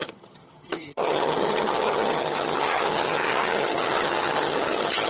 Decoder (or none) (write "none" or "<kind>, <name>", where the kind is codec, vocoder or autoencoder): vocoder, HiFi-GAN